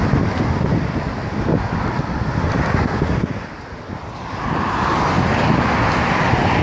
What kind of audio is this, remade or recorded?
recorded